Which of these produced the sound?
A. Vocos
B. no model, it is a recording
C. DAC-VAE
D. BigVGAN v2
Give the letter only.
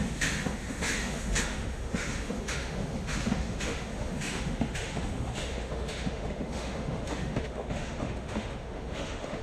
C